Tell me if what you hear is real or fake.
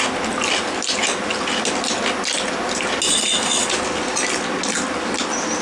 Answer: real